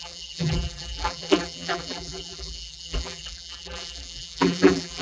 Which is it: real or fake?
fake